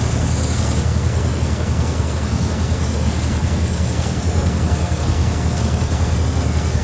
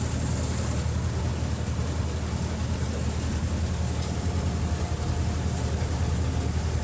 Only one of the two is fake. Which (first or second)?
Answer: first